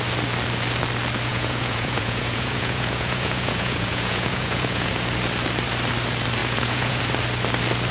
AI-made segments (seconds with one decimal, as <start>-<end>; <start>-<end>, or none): 1.3-4.9; 6.4-7.0